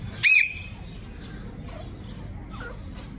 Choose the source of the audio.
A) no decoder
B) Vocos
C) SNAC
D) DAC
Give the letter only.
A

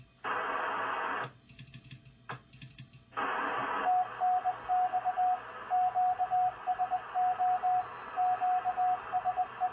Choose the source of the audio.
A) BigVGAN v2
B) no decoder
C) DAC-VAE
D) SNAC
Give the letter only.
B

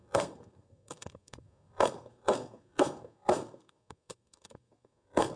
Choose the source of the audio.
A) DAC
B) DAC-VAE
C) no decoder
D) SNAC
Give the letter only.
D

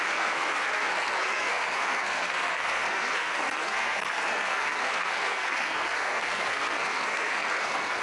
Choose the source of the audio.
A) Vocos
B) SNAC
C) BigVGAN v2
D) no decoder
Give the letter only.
B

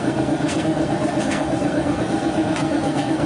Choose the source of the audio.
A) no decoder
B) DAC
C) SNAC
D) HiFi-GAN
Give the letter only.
C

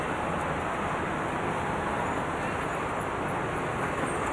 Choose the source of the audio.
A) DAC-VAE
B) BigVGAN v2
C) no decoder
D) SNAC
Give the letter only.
C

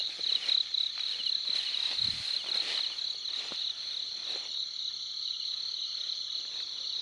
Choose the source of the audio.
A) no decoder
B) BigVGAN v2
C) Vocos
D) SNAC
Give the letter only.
A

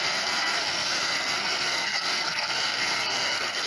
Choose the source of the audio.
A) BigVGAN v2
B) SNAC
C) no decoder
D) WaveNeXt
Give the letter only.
B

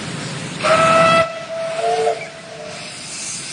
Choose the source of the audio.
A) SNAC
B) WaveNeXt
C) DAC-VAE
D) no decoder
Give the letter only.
D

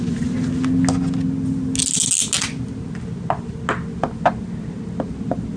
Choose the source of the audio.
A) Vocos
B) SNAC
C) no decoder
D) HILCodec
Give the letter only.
C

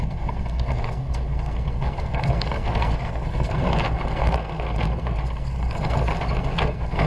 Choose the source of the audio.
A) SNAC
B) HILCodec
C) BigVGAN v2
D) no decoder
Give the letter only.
A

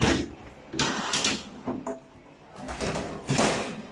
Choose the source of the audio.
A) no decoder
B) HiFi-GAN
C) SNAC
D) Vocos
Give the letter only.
A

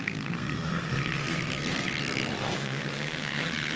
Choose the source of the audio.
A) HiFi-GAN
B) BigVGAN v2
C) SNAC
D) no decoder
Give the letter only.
C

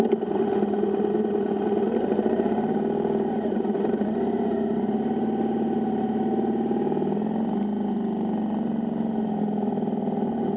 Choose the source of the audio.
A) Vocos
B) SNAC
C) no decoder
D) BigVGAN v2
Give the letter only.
C